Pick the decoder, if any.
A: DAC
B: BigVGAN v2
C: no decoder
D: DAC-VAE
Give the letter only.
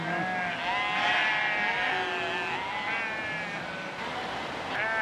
C